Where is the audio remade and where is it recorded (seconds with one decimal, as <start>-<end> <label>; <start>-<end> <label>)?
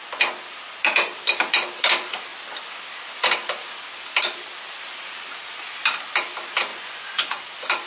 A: 0.0-6.7 recorded; 6.7-7.4 remade; 7.4-7.9 recorded